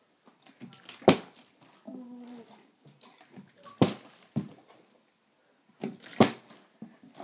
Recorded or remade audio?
recorded